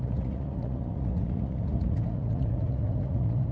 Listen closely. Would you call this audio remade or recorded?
remade